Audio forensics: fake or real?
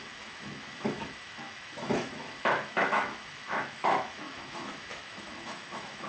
fake